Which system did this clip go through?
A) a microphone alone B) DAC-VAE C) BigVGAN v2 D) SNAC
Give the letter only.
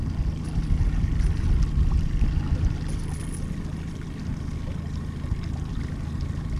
A